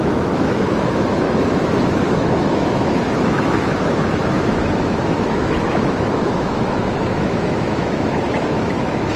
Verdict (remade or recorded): remade